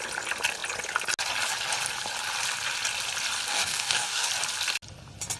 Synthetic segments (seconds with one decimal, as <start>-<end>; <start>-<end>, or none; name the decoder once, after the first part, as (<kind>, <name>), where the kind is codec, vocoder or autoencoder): 3.5-4.3 (codec, DAC)